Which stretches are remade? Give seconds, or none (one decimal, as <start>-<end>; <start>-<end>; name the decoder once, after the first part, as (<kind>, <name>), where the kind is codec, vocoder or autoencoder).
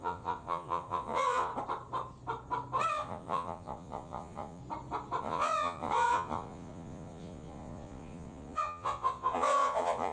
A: 0.0-1.5 (vocoder, Vocos); 2.9-4.6; 5.2-10.1